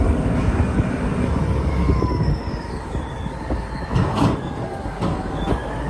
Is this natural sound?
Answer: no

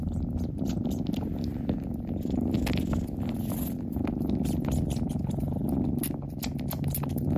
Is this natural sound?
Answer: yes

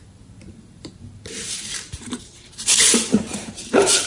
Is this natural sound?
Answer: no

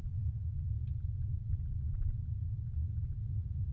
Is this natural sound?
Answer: yes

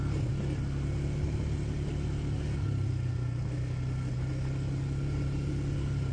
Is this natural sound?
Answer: yes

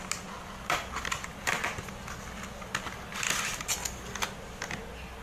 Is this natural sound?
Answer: yes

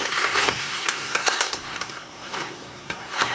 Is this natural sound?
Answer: no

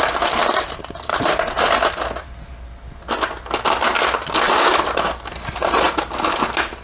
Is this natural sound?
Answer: yes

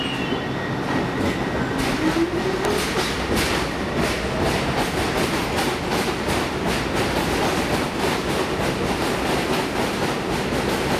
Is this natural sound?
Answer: yes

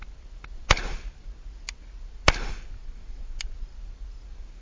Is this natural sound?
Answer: yes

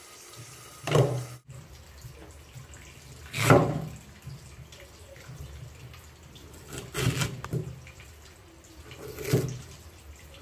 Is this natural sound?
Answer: yes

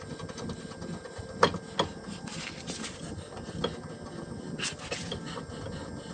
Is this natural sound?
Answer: yes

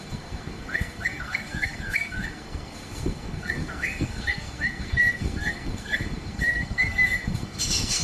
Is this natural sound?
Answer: no